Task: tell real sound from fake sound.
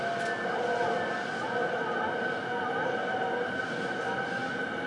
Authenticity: real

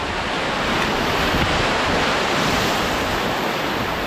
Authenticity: real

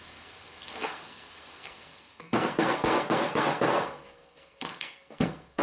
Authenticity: fake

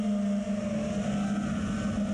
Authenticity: real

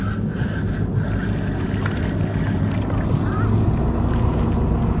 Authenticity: real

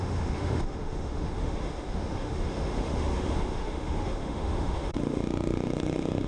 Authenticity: fake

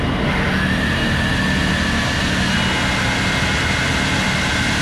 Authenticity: real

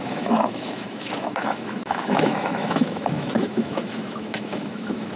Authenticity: fake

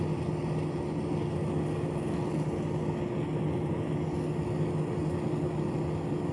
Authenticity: real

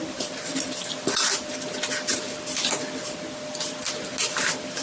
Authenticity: real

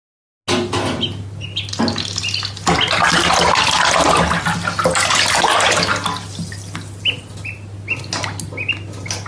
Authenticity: real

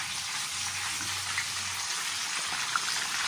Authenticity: real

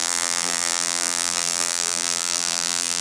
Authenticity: fake